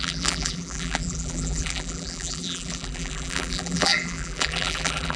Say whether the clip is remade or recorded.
remade